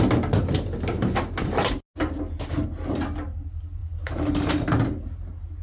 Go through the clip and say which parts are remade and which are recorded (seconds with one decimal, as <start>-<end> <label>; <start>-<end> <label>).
0.0-5.6 recorded